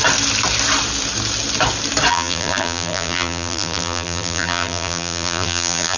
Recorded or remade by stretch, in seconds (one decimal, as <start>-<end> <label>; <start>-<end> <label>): 0.0-2.1 recorded; 2.1-6.0 remade